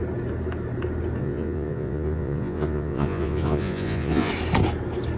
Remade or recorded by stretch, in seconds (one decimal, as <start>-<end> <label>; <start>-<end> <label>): 0.0-1.2 recorded; 1.2-4.3 remade; 4.3-5.2 recorded